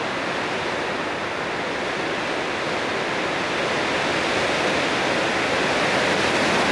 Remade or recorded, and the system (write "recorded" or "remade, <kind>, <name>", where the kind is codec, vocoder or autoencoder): recorded